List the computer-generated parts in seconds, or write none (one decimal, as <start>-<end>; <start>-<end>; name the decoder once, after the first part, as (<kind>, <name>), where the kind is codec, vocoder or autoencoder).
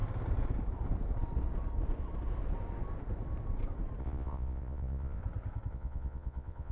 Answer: 4.0-5.2 (vocoder, Vocos); 5.7-6.7